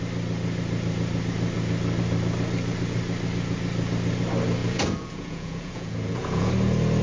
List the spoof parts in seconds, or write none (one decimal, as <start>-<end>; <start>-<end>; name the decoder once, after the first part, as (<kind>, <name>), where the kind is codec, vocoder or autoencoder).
4.6-6.5 (vocoder, Vocos)